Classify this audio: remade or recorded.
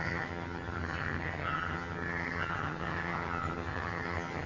remade